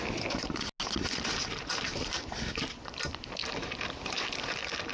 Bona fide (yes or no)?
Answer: yes